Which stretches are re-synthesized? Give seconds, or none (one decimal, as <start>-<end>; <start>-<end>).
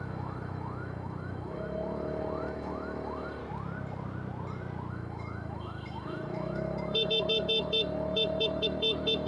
0.0-3.4; 4.9-9.3